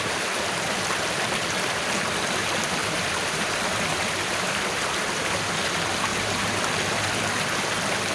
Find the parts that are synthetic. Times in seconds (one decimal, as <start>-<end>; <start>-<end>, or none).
2.8-4.6; 6.1-6.6